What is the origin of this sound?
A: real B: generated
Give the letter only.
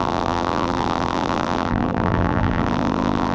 B